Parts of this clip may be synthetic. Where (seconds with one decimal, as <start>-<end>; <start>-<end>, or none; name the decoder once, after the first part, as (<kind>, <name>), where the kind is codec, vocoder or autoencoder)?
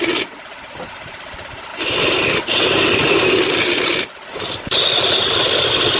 none